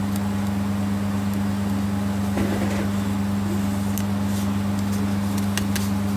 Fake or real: real